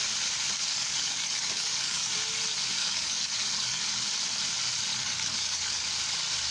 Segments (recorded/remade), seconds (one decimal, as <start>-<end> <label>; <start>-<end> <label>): 0.0-0.7 recorded; 0.7-2.1 remade; 2.1-2.8 recorded; 2.8-4.1 remade; 4.1-4.9 recorded; 4.9-5.9 remade; 5.9-6.5 recorded